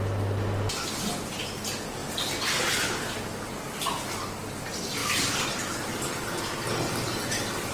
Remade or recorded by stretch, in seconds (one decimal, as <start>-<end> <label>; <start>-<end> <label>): 0.0-7.7 recorded

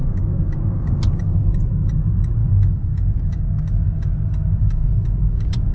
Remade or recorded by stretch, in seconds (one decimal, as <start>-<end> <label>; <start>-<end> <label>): 0.0-0.9 remade; 0.9-2.4 recorded; 2.4-4.1 remade; 4.1-4.6 recorded; 4.6-5.7 remade

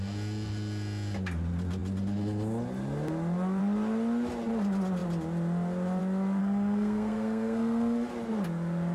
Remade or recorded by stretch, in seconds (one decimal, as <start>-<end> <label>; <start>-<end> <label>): 0.0-6.4 recorded; 6.4-8.1 remade; 8.1-8.9 recorded

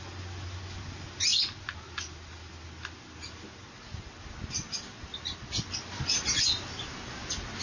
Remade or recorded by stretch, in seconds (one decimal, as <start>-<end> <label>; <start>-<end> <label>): 0.0-7.6 recorded

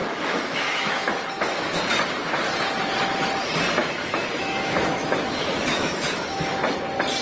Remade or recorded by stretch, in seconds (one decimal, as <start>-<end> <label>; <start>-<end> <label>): 0.0-1.8 remade; 1.8-3.8 recorded; 3.8-6.8 remade; 6.8-7.2 recorded